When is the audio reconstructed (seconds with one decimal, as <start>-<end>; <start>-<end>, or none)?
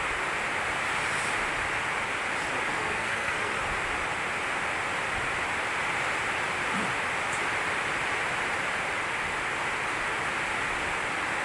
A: 2.7-3.6